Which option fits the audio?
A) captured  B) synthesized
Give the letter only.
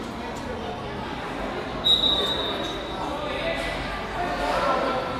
A